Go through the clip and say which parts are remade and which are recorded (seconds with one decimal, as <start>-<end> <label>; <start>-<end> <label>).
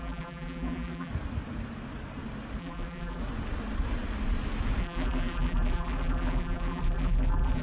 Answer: 0.0-1.1 remade; 1.1-2.6 recorded; 2.6-3.2 remade; 3.2-4.8 recorded; 4.8-7.6 remade